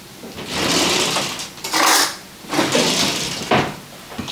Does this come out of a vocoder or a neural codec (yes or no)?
no